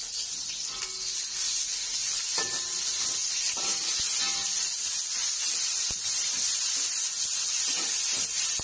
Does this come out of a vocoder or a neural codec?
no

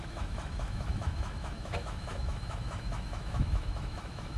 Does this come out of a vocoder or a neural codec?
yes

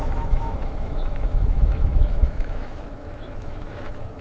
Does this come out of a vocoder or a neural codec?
yes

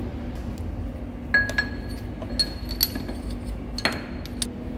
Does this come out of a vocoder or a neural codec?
no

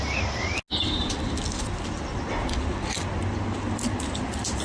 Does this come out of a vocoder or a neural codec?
no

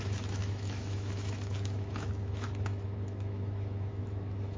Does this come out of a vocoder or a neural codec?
yes